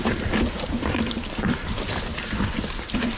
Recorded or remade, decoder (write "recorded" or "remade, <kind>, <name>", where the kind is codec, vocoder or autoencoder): remade, vocoder, BigVGAN v2